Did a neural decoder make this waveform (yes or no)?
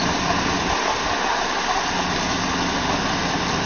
no